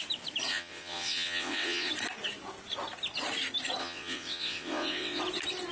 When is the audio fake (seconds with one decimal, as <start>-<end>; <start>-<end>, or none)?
0.5-1.9; 3.8-5.2

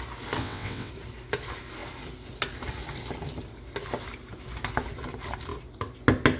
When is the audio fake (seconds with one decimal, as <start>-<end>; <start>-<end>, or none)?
0.4-0.9

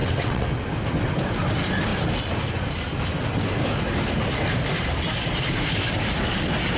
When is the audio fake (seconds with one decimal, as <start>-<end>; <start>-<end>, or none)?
0.0-0.5

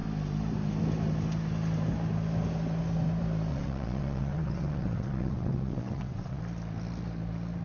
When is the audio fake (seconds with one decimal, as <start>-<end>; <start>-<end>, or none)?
3.5-6.4

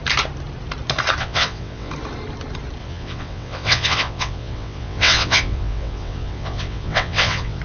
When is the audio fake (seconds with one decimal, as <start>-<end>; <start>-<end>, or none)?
1.2-1.9; 2.8-7.6

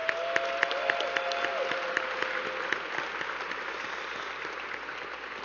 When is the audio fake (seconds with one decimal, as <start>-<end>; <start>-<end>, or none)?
none